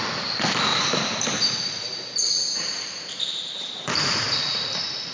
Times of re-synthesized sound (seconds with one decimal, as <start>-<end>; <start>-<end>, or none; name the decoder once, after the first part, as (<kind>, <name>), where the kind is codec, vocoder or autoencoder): 0.7-3.8 (vocoder, BigVGAN v2)